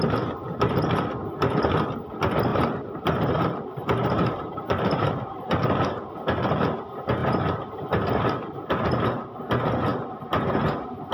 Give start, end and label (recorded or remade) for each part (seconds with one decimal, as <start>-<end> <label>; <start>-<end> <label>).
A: 0.0-2.5 recorded; 2.5-5.6 remade; 5.6-7.2 recorded; 7.2-8.7 remade; 8.7-11.1 recorded